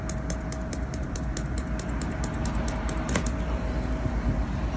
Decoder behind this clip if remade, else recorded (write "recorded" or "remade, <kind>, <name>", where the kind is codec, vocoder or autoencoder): recorded